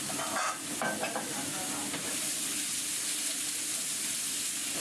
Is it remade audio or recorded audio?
recorded